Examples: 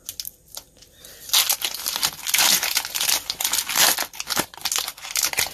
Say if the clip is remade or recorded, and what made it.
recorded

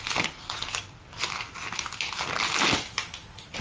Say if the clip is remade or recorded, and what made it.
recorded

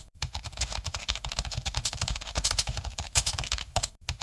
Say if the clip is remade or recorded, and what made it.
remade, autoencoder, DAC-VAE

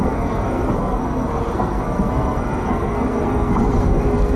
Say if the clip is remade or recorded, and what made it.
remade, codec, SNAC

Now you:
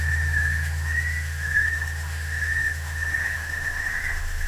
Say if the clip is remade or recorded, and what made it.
remade, autoencoder, DAC-VAE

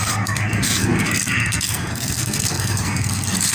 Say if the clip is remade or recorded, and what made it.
remade, codec, SNAC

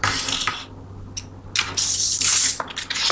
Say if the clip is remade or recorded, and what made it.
recorded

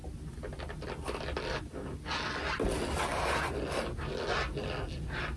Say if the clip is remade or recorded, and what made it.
recorded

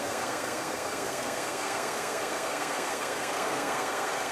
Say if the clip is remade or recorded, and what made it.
remade, codec, SNAC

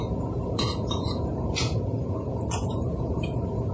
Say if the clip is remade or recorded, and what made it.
remade, vocoder, Vocos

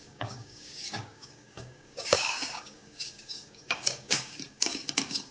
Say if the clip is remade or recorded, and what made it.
remade, codec, DAC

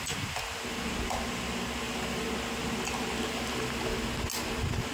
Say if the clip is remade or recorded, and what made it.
recorded